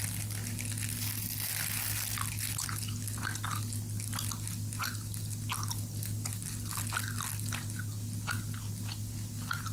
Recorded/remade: recorded